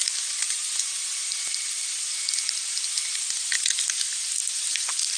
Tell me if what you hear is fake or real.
real